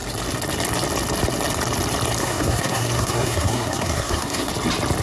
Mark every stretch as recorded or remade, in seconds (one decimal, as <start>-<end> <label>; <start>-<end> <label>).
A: 0.0-2.2 recorded; 2.2-4.5 remade; 4.5-5.0 recorded